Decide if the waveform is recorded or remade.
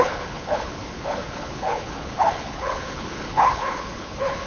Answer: remade